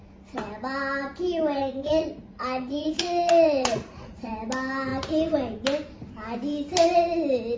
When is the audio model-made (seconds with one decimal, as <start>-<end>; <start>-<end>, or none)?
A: 1.6-4.3